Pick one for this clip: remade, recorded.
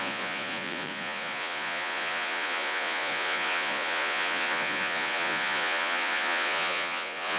remade